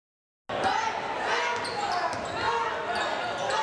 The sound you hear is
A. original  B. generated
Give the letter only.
A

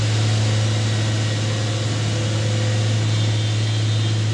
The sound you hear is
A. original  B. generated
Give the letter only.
A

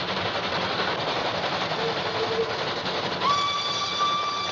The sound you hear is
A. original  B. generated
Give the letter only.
A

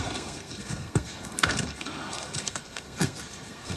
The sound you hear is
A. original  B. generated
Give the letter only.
B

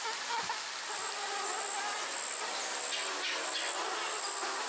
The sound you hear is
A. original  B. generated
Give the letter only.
A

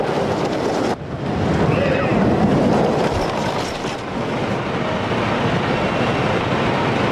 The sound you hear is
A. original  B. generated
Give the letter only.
A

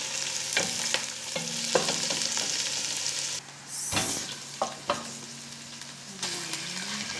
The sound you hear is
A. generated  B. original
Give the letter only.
B